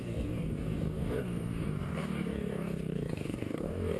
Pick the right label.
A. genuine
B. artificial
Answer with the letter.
B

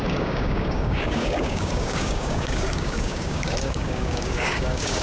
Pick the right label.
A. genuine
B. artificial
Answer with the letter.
B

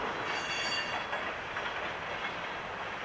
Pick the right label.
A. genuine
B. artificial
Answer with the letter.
A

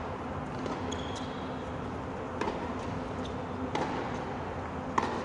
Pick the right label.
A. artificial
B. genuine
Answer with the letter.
B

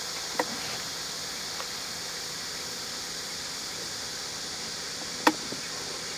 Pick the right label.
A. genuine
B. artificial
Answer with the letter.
A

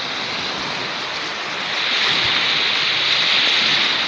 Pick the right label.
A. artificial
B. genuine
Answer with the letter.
B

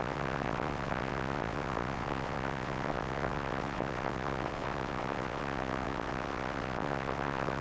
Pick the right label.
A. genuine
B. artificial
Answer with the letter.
B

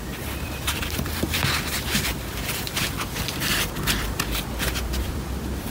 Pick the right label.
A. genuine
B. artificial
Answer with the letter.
B